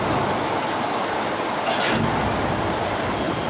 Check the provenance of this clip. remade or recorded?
recorded